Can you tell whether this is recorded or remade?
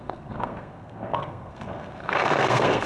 remade